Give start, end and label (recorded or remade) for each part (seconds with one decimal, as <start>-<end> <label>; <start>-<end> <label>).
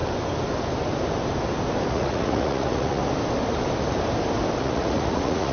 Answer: 0.0-1.9 recorded; 1.9-3.0 remade; 3.0-4.6 recorded; 4.6-5.5 remade